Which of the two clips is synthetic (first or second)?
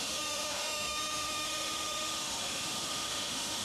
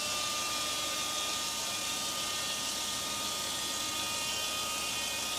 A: first